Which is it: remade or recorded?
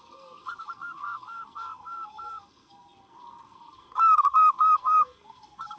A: remade